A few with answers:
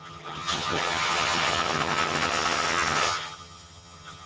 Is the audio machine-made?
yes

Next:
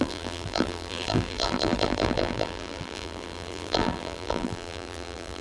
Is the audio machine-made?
yes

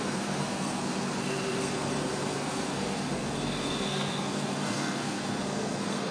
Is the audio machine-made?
yes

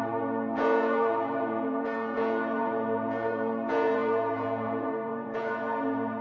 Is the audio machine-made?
yes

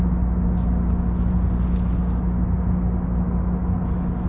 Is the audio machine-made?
no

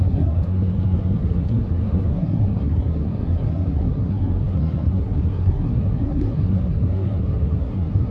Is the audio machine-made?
yes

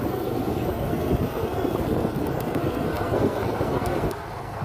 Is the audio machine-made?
yes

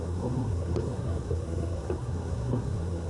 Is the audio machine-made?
yes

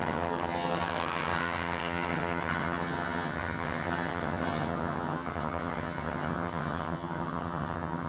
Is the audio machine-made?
yes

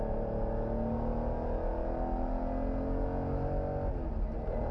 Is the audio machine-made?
no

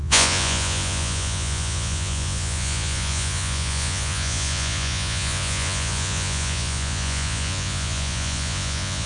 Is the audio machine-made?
yes